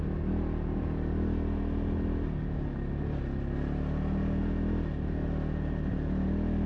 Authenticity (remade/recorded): recorded